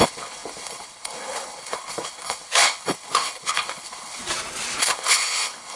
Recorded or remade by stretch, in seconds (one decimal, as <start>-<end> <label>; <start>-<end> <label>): 0.0-4.2 remade; 4.2-4.8 recorded; 4.8-5.8 remade